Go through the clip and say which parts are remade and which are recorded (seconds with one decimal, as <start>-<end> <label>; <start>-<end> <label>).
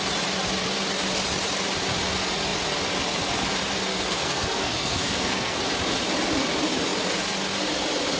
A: 0.0-3.9 recorded; 3.9-5.6 remade; 5.6-8.2 recorded